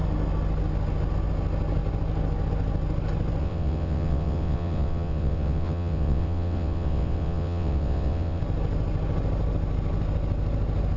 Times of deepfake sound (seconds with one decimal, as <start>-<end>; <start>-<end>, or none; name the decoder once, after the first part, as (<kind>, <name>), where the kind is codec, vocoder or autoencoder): 3.4-8.4 (vocoder, WaveNeXt)